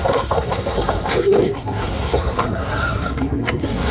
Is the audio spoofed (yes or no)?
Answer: yes